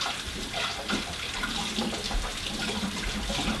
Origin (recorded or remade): remade